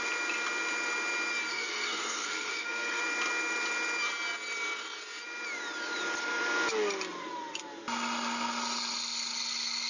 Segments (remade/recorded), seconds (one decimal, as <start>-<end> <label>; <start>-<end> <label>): 0.0-1.5 recorded; 1.5-3.0 remade; 3.0-9.9 recorded